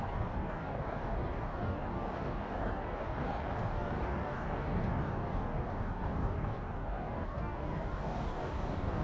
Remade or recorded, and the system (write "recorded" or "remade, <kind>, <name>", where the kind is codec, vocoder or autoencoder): remade, codec, DAC